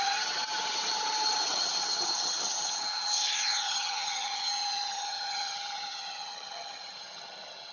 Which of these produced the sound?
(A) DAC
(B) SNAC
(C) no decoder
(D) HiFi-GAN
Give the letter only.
D